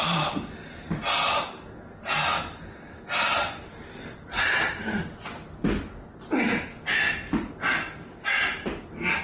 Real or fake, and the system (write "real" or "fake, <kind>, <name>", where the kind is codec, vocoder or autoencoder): real